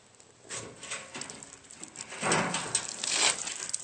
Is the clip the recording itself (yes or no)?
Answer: yes